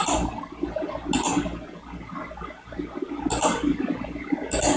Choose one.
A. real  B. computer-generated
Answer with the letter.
A